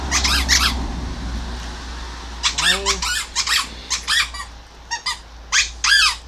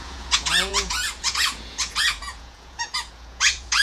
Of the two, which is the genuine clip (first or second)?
first